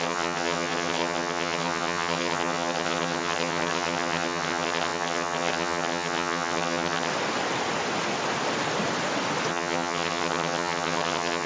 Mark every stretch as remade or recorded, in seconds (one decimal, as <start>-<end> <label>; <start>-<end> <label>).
0.0-7.1 remade; 7.1-9.5 recorded; 9.5-11.5 remade